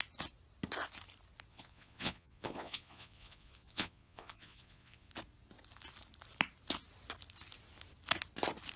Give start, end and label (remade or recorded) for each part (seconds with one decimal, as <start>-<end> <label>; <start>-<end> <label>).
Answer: 0.0-1.5 recorded; 1.5-5.1 remade; 5.1-8.8 recorded